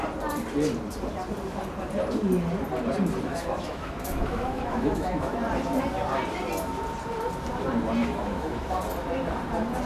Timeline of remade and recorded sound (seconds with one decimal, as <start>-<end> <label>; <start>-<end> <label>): 0.0-3.3 recorded; 3.3-5.4 remade; 5.4-8.0 recorded; 8.0-8.8 remade; 8.8-9.9 recorded

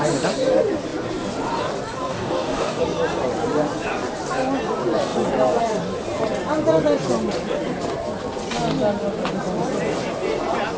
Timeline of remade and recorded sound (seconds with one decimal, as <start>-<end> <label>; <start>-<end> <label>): 0.0-2.1 recorded; 2.1-2.8 remade; 2.8-10.8 recorded

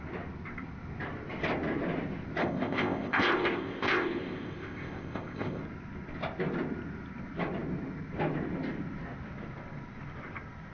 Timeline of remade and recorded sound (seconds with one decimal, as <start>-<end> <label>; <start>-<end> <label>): 0.0-2.4 recorded; 2.4-5.6 remade; 5.6-10.7 recorded

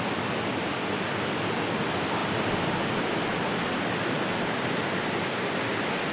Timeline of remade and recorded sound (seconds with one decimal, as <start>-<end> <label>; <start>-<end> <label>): 0.0-6.1 recorded